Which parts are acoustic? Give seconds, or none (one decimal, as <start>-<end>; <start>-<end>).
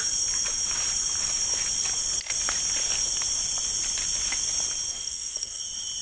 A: 0.0-4.9; 5.6-6.0